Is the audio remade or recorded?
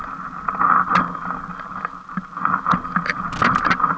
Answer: recorded